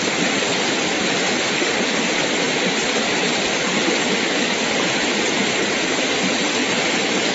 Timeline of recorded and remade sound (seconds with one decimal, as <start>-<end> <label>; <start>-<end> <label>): 0.0-7.3 recorded